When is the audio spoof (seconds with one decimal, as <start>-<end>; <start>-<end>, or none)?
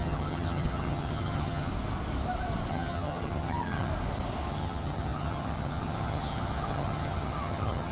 0.0-1.7; 2.7-3.9; 4.5-7.9